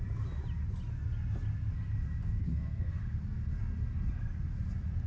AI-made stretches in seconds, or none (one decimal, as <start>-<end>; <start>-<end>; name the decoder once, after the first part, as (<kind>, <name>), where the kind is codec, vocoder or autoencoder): 2.5-3.0 (codec, SNAC)